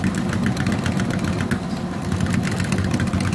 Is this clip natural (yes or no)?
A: yes